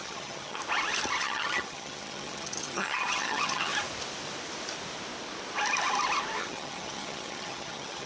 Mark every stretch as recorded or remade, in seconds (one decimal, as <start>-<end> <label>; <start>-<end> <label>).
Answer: 0.0-0.6 remade; 0.6-1.2 recorded; 1.2-3.7 remade; 3.7-6.4 recorded; 6.4-8.1 remade